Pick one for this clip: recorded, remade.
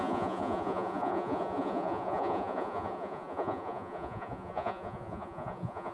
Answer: remade